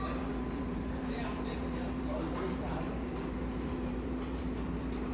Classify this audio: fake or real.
fake